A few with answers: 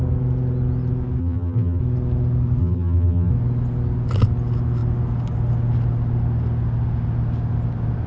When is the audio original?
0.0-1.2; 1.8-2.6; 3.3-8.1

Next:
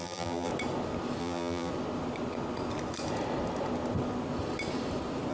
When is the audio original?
0.5-1.2; 1.7-5.3

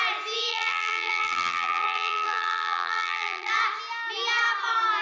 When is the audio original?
0.0-0.5; 3.5-5.0

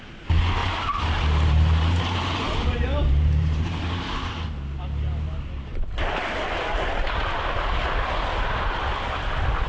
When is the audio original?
0.0-0.6; 4.3-9.7